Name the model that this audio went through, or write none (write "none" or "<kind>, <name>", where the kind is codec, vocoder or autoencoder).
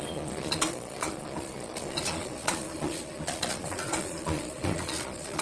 vocoder, Vocos